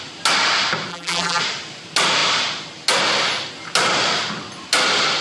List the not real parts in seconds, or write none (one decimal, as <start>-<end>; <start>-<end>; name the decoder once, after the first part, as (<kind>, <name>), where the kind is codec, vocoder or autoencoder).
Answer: 0.9-1.4 (vocoder, BigVGAN v2)